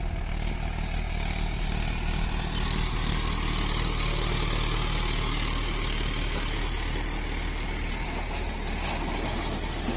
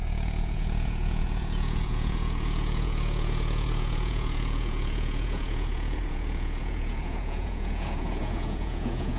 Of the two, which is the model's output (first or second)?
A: second